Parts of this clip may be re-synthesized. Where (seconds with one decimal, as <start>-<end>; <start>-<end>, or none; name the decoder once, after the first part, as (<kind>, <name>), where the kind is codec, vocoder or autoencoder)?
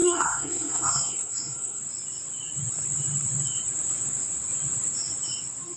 0.0-1.8 (codec, SNAC)